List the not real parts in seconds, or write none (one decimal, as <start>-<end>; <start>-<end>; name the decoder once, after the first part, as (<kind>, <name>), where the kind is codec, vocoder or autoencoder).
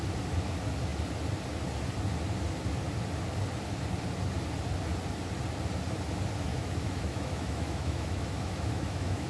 6.5-9.3 (autoencoder, DAC-VAE)